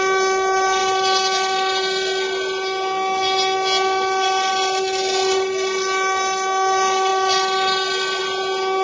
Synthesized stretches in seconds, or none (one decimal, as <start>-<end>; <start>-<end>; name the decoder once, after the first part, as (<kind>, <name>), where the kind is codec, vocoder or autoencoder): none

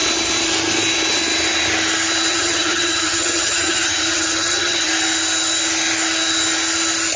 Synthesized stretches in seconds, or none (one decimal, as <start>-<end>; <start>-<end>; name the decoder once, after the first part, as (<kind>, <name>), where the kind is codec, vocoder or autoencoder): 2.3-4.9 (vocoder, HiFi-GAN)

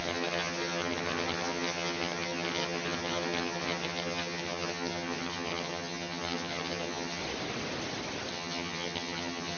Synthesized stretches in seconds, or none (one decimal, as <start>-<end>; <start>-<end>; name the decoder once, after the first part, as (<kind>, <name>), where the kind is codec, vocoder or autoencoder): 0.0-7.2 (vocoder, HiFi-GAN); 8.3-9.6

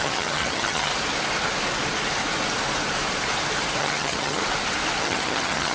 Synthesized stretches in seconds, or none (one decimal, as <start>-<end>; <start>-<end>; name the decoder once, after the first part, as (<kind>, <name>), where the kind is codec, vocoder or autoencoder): 0.0-0.9 (vocoder, HiFi-GAN); 3.8-4.4; 5.0-5.7

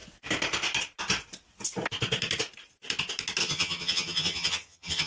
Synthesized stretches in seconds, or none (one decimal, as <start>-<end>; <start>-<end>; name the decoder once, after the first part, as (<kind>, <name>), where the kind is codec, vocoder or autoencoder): 3.4-5.1 (vocoder, HiFi-GAN)